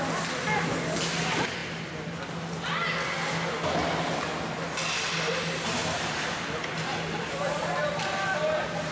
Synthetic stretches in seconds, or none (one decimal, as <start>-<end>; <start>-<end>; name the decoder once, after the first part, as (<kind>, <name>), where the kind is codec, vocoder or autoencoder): 5.8-8.9 (vocoder, BigVGAN v2)